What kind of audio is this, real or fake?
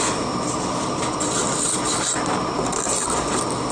real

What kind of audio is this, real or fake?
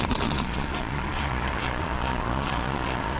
fake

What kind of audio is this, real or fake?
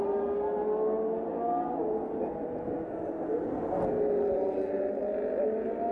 real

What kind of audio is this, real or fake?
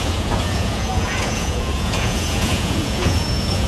fake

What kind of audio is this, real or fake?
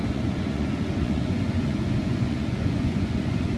fake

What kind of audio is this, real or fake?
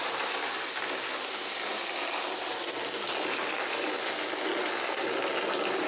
real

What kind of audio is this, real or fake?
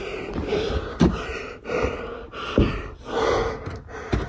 real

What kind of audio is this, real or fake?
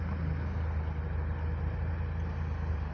real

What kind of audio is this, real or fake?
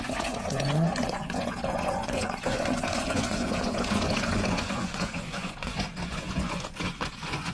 fake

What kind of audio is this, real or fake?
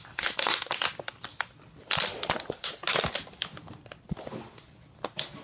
real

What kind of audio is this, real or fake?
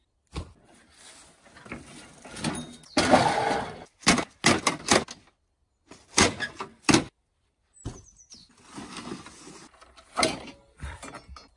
real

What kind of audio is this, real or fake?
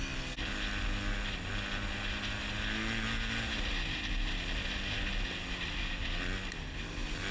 real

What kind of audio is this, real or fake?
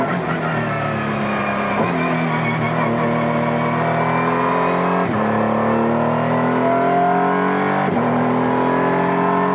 real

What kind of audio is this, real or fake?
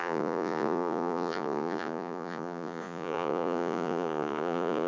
fake